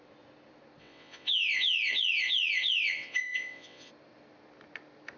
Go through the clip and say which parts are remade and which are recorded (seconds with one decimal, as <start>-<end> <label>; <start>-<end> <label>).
0.0-0.8 recorded; 0.8-3.9 remade; 3.9-5.2 recorded